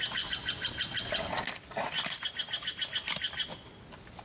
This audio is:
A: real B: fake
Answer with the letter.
A